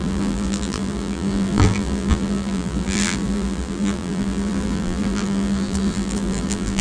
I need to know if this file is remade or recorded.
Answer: remade